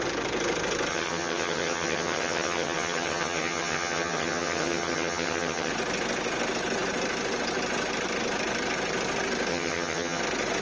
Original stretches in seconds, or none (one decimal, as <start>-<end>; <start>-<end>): 0.0-0.9; 5.7-9.5; 10.2-10.6